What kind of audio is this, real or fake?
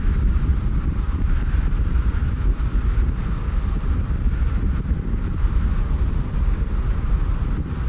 real